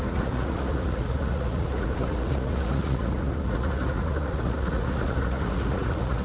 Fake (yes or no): yes